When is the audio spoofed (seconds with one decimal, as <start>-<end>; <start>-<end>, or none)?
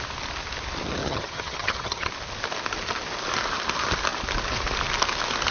1.0-2.1